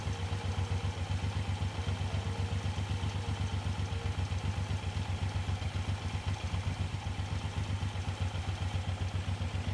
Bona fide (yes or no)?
yes